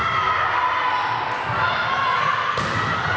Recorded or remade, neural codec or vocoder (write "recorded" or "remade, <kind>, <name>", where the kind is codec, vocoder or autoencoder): recorded